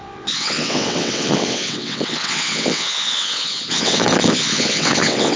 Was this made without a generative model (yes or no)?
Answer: no